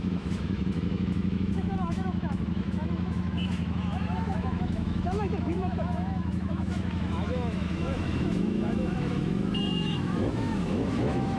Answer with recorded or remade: remade